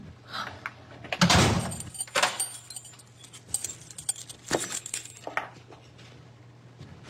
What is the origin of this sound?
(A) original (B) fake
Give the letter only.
A